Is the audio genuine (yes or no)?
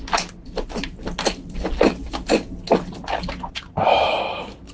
yes